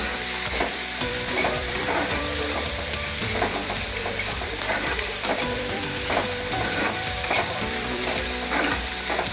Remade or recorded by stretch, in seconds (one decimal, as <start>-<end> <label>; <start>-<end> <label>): 0.0-0.6 recorded; 0.6-9.3 remade